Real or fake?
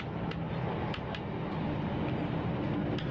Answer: real